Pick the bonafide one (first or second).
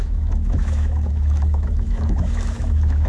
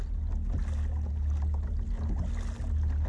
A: second